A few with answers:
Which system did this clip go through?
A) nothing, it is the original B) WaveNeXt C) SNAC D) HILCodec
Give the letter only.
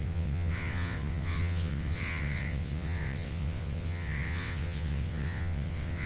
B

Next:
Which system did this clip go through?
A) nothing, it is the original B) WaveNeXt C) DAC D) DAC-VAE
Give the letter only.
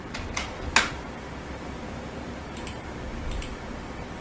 A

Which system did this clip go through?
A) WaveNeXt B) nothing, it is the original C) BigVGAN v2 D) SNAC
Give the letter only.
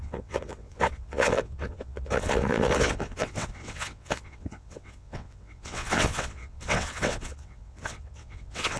A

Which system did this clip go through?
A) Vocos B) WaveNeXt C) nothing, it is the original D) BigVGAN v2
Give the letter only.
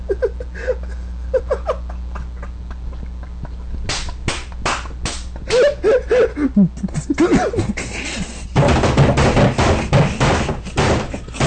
C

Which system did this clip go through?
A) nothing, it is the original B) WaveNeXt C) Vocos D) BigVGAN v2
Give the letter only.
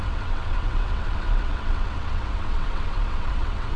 B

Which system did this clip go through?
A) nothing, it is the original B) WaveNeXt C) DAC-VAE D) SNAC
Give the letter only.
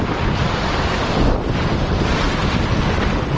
A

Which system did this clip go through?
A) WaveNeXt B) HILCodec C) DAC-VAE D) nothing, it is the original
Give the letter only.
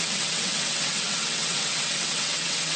A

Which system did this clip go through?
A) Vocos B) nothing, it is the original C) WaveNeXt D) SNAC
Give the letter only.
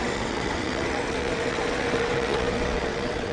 C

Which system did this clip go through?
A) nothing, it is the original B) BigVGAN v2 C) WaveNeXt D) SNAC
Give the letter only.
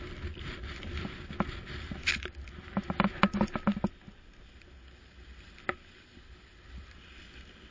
A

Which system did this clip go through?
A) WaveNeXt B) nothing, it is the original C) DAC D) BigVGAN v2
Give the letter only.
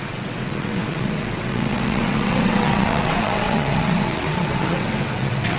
A